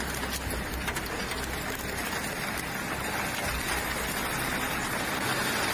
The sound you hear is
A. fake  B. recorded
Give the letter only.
B